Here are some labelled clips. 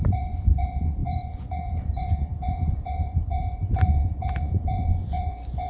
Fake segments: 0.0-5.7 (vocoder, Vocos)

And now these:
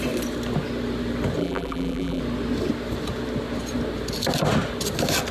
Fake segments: 1.4-2.2 (vocoder, BigVGAN v2)

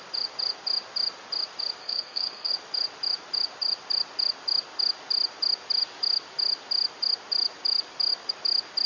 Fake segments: 1.8-2.5 (codec, SNAC)

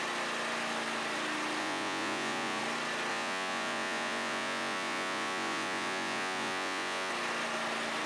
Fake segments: 1.6-2.6 (vocoder, Vocos); 3.1-7.1

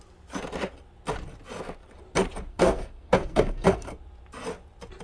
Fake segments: 2.5-3.9 (codec, SNAC)